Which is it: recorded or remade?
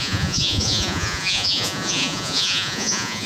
remade